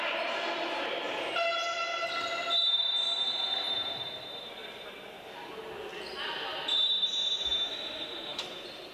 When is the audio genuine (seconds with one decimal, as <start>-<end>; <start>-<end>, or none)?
0.0-7.7; 8.4-8.9